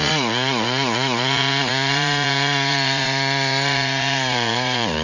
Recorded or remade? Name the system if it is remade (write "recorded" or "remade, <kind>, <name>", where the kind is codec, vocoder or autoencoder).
remade, vocoder, Vocos